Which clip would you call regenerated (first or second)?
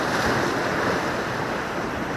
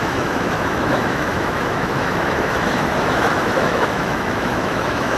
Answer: second